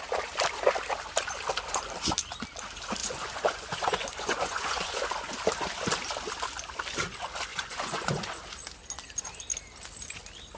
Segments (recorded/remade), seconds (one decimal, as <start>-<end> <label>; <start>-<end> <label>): 0.0-3.0 recorded; 3.0-4.9 remade; 4.9-7.5 recorded; 7.5-8.3 remade; 8.3-10.6 recorded